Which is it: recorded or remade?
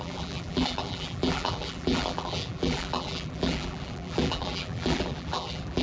remade